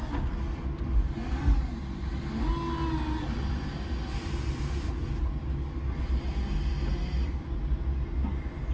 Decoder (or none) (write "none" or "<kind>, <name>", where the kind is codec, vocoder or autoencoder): none